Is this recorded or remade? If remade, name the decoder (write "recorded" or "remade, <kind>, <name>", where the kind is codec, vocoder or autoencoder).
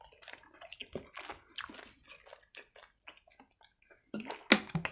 recorded